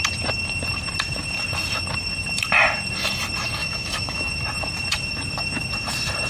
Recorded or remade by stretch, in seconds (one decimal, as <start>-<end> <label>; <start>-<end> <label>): 0.0-3.6 recorded; 3.6-4.3 remade; 4.3-6.3 recorded